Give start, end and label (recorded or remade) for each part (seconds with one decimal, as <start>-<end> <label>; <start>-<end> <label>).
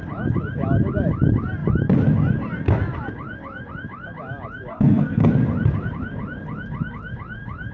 0.0-4.7 recorded; 4.7-5.3 remade; 5.3-7.7 recorded